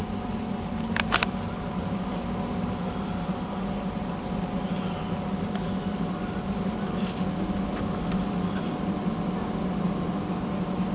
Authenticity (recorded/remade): recorded